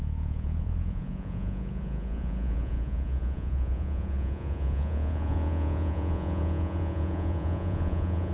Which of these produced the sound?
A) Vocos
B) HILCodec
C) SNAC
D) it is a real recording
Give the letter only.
A